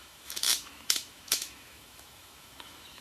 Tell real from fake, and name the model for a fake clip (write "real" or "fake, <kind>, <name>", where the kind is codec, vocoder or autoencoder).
fake, autoencoder, DAC-VAE